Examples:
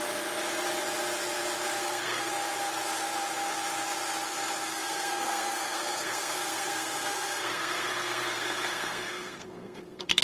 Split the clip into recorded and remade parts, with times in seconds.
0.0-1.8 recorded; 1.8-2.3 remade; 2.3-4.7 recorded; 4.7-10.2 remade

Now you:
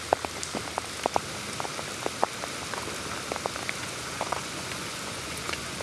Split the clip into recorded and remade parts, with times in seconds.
0.0-3.8 recorded; 3.8-5.8 remade

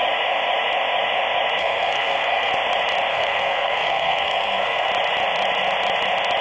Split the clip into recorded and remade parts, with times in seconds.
0.0-1.6 recorded; 1.6-2.5 remade; 2.5-3.1 recorded; 3.1-4.9 remade; 4.9-6.4 recorded